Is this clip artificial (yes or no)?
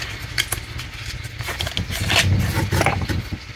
no